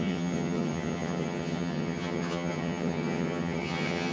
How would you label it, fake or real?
fake